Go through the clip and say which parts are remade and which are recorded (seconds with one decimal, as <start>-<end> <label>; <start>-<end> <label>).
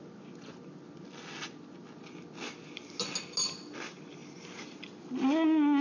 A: 0.0-5.8 recorded